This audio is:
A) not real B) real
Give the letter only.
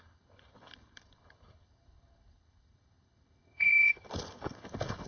A